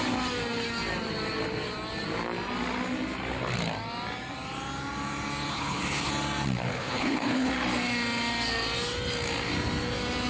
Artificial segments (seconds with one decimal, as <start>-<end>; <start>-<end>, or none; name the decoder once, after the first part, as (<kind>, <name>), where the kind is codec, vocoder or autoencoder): 5.5-6.1 (codec, HILCodec); 6.7-7.5